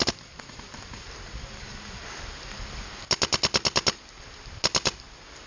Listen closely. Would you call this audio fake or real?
real